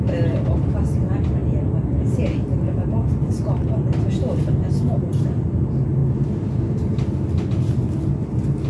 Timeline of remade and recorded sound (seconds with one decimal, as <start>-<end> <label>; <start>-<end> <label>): 0.0-8.7 recorded